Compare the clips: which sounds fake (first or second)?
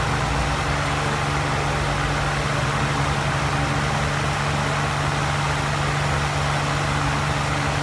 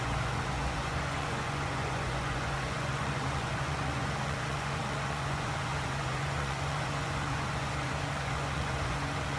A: second